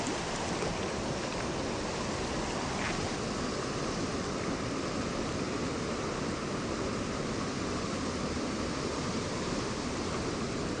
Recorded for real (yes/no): yes